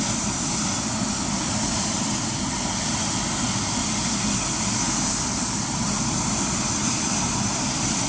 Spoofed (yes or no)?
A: no